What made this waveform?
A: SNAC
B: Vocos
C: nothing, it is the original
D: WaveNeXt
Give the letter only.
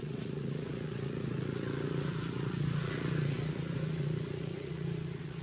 B